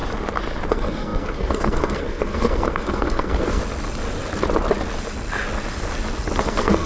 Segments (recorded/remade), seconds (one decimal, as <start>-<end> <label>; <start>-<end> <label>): 0.0-0.7 recorded; 0.7-3.6 remade; 3.6-6.4 recorded; 6.4-6.9 remade